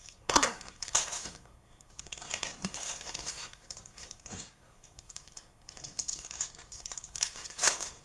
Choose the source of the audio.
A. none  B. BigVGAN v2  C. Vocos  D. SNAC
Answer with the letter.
D